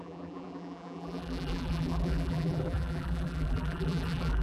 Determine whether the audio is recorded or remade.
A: remade